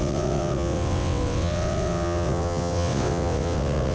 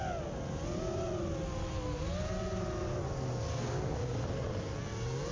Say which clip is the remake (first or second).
first